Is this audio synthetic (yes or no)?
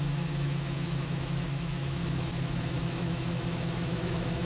yes